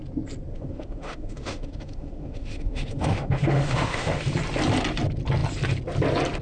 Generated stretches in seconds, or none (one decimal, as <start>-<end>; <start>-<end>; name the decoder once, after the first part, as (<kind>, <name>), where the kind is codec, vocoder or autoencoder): 0.5-4.2 (autoencoder, DAC-VAE)